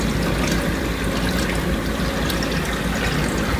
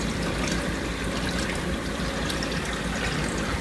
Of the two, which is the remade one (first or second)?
second